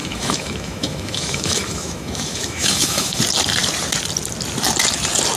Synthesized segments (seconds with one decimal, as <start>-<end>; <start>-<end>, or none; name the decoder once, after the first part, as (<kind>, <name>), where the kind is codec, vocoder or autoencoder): 0.0-3.2 (autoencoder, DAC-VAE)